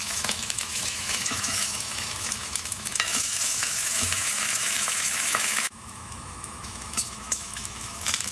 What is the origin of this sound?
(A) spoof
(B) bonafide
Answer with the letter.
A